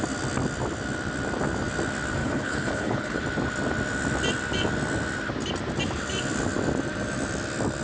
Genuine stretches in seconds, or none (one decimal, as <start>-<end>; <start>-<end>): 0.0-2.2; 3.2-7.8